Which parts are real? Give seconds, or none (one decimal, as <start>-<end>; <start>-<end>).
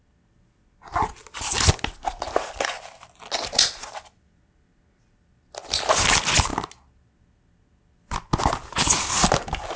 0.0-9.8